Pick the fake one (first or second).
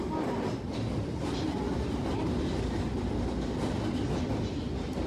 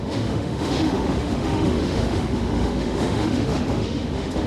second